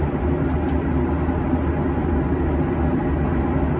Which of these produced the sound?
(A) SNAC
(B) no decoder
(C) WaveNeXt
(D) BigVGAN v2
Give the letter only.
B